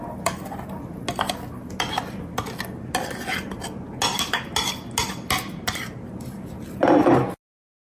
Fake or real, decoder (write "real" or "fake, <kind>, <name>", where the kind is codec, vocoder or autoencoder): real